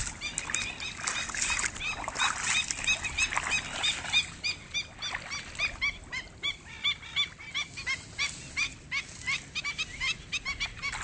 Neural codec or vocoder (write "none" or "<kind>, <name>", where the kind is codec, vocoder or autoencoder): none